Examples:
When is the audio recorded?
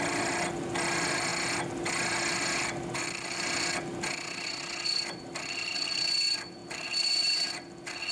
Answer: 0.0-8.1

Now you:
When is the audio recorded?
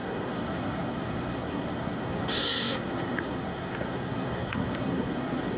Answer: none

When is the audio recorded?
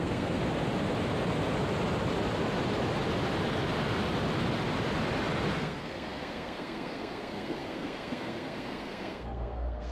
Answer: 0.4-5.5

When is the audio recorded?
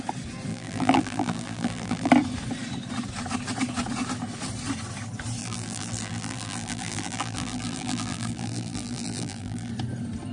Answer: 0.0-0.5; 2.1-5.4; 9.7-10.3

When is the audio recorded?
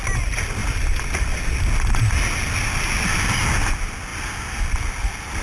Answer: 0.0-5.4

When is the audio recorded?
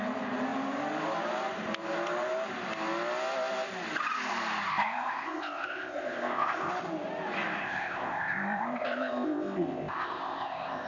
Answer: 0.0-4.7; 6.7-7.6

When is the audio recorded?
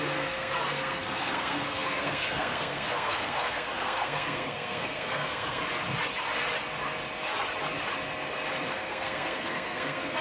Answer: 5.6-8.7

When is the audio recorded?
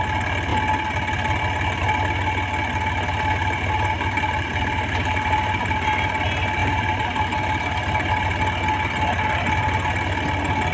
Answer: 0.0-3.4; 6.1-6.6; 8.2-10.7